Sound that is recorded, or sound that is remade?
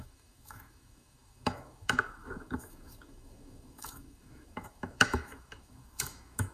remade